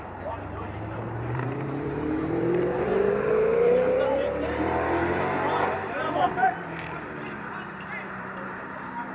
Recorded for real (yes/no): no